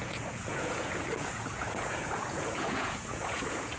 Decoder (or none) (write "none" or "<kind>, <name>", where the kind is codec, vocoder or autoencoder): vocoder, Vocos